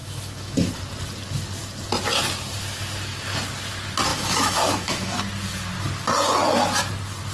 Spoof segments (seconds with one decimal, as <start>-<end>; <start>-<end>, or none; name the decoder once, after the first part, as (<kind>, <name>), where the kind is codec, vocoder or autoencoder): 0.0-0.7 (autoencoder, DAC-VAE); 4.1-5.2